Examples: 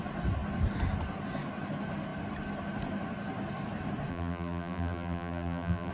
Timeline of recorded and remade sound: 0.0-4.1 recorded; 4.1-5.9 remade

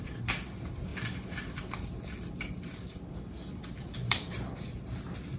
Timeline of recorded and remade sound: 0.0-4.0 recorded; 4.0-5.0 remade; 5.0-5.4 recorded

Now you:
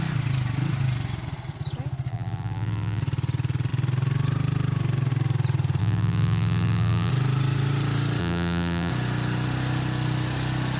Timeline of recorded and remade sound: 0.0-2.1 recorded; 2.1-3.0 remade; 3.0-5.8 recorded; 5.8-7.1 remade; 7.1-8.2 recorded; 8.2-8.9 remade; 8.9-10.8 recorded

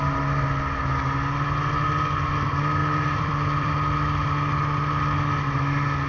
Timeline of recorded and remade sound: 0.0-2.8 recorded; 2.8-3.7 remade; 3.7-6.1 recorded

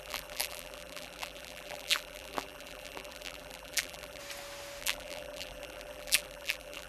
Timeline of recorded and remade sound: 0.0-4.2 remade; 4.2-4.8 recorded; 4.8-6.9 remade

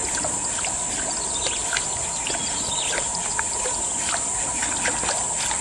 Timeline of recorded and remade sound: 0.0-5.6 recorded